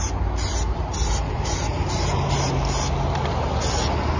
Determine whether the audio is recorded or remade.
recorded